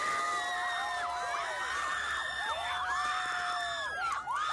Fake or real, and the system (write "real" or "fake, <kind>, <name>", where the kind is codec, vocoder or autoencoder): real